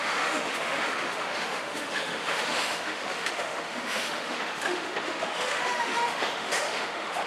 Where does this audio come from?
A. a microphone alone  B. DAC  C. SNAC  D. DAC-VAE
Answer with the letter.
D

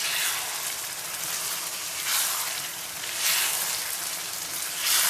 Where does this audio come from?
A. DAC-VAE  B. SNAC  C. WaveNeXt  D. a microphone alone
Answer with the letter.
D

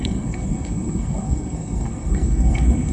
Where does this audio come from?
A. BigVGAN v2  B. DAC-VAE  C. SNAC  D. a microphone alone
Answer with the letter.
C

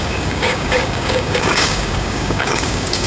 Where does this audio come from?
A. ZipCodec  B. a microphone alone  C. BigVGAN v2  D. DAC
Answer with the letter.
D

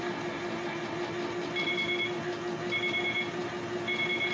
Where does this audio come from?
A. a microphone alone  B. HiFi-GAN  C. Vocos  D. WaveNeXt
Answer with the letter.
A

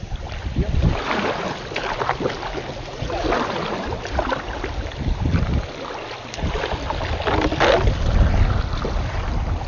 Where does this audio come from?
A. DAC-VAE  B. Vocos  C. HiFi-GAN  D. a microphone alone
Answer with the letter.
D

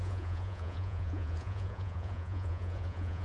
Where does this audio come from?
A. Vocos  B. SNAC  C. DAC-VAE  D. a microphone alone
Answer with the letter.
A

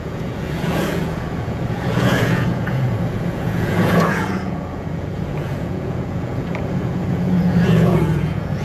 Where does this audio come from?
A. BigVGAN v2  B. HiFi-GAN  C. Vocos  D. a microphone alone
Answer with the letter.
C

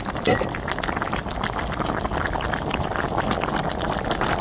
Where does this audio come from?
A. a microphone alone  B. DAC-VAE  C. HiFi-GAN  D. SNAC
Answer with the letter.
A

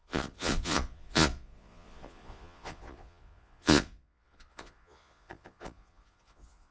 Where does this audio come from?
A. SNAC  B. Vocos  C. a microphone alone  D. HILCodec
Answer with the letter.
B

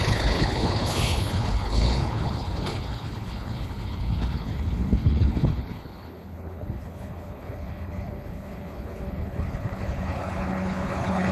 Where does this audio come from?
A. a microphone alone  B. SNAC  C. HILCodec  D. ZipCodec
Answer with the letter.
C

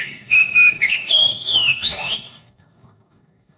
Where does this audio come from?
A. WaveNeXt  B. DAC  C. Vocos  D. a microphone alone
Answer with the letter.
B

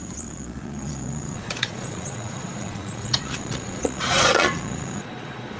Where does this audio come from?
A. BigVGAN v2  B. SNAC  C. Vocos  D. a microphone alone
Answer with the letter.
C